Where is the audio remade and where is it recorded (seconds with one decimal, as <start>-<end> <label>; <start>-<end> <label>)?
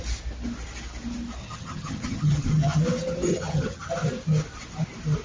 0.0-1.4 recorded; 1.4-2.8 remade; 2.8-3.3 recorded; 3.3-3.9 remade; 3.9-5.2 recorded